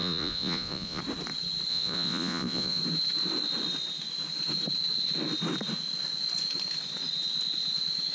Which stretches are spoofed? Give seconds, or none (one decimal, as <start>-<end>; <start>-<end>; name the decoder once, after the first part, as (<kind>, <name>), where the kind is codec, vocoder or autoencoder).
0.0-1.0 (vocoder, Vocos); 1.7-2.8

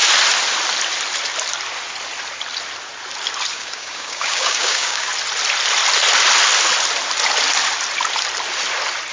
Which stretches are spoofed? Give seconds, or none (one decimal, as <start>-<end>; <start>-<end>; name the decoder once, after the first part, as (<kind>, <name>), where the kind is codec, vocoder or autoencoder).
3.5-5.1 (codec, DAC)